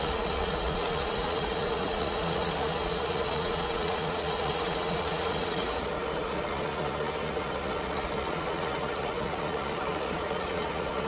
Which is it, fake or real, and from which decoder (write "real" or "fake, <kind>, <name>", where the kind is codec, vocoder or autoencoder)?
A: fake, vocoder, Vocos